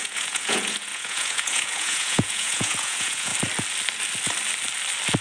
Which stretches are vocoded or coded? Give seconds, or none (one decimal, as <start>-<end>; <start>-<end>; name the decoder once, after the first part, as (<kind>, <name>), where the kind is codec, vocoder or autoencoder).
0.0-3.3 (vocoder, Vocos)